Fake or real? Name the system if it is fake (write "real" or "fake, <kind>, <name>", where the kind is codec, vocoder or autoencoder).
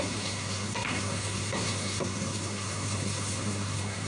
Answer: fake, codec, SNAC